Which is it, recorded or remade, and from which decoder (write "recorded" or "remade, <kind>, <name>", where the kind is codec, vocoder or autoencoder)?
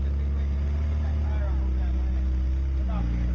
recorded